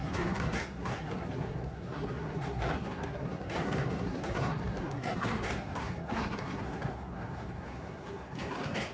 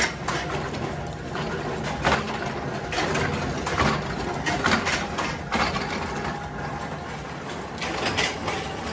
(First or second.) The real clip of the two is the second